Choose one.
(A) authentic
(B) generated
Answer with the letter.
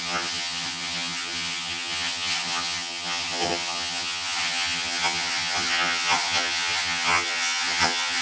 B